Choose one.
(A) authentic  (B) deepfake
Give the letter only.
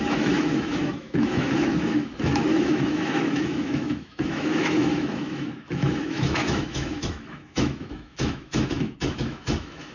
B